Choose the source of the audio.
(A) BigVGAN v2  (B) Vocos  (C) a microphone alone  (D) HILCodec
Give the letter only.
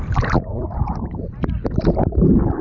A